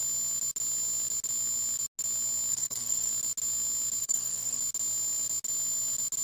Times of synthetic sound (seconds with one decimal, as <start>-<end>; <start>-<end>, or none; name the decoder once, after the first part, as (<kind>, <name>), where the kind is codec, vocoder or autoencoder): 2.5-3.1 (codec, SNAC); 4.0-4.6